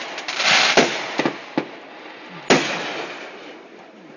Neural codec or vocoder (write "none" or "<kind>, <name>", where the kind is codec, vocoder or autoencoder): none